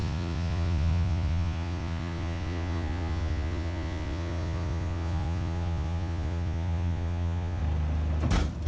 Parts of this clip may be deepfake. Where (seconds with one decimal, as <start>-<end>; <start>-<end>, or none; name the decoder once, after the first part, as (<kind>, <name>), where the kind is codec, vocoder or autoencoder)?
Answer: 0.0-7.6 (vocoder, Vocos)